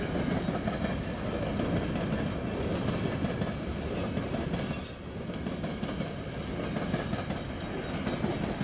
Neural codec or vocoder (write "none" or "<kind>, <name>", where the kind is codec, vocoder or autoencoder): none